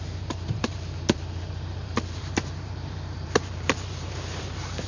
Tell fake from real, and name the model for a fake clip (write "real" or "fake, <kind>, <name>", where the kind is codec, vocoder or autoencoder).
fake, vocoder, BigVGAN v2